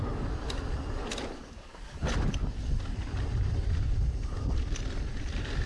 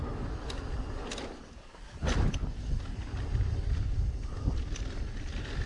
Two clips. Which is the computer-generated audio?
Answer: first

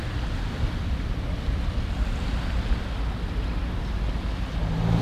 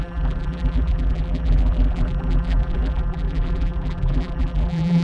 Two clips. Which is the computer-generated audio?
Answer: second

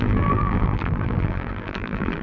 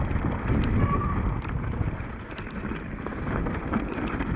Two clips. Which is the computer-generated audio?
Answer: first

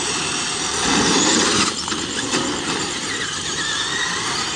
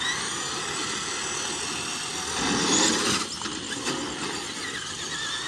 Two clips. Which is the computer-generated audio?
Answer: first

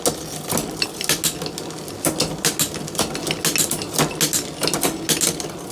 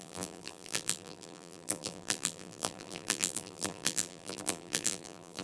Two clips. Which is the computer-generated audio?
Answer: second